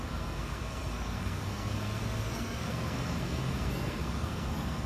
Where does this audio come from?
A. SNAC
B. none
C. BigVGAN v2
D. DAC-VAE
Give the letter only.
A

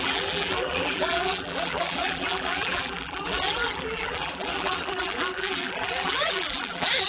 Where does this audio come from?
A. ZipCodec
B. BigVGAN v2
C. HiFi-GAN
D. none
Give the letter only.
B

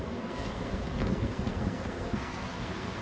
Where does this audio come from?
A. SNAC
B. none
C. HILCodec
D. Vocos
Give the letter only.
A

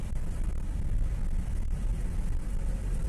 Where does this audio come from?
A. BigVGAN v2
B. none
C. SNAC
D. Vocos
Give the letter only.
B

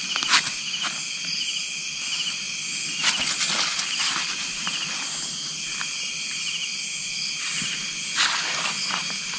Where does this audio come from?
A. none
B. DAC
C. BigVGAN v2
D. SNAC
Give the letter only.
A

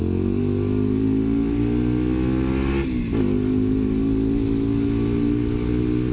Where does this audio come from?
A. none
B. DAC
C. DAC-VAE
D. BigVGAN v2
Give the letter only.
A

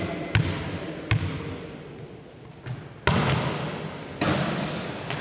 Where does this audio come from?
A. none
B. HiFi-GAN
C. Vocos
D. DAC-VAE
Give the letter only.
A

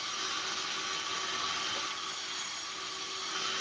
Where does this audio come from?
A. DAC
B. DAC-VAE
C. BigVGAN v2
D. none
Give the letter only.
D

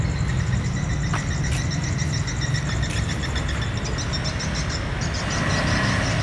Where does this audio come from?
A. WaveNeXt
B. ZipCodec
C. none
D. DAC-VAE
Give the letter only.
C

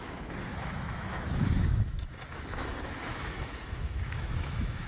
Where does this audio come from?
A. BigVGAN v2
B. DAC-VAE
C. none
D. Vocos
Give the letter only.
B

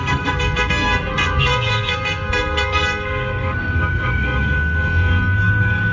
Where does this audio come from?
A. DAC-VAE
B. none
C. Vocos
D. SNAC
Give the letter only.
D